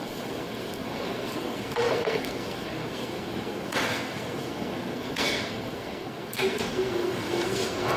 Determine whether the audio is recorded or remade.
remade